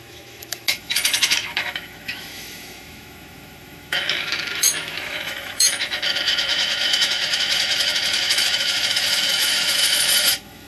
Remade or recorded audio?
remade